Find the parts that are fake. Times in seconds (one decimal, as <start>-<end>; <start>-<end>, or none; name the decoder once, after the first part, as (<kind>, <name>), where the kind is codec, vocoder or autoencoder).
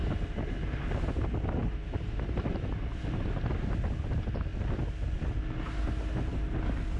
0.0-1.0 (vocoder, BigVGAN v2); 1.6-2.7